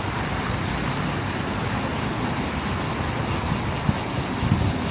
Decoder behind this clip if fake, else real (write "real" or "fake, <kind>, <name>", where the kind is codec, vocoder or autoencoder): real